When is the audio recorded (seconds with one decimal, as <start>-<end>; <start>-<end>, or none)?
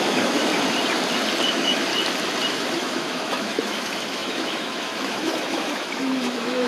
0.5-1.5; 1.9-2.5